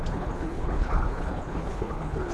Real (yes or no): no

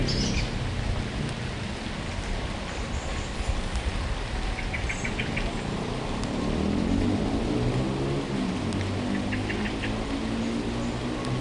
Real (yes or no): yes